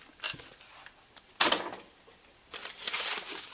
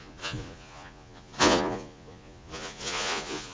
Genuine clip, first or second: first